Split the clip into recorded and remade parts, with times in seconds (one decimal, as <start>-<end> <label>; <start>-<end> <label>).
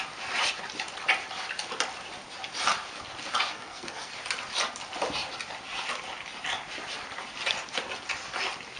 0.0-3.5 recorded; 3.5-4.1 remade; 4.1-8.8 recorded